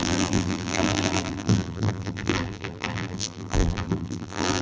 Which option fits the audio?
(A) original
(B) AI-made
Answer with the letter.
B